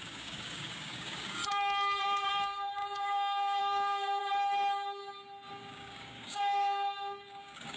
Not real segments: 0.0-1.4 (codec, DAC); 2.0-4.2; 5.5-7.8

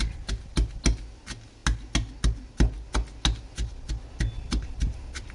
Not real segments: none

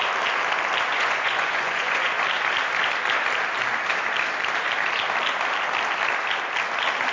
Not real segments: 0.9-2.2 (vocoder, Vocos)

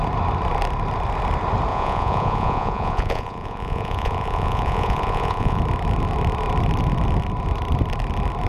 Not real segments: 1.7-5.6 (vocoder, Vocos)

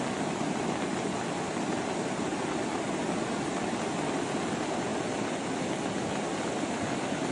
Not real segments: none